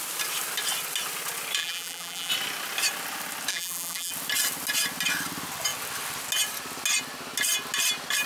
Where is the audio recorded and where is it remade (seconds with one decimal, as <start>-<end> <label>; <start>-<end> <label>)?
0.0-1.6 recorded; 1.6-2.3 remade; 2.3-3.5 recorded; 3.5-4.1 remade; 4.1-8.3 recorded